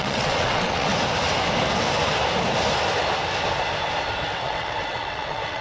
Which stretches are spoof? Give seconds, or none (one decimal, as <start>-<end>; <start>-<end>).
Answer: 0.0-0.9; 4.3-5.6